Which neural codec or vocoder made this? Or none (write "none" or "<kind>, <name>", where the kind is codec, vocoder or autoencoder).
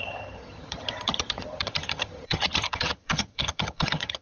vocoder, HiFi-GAN